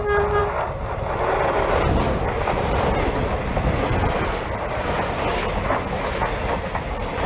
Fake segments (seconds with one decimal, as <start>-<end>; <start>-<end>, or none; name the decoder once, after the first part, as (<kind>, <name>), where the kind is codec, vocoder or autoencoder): none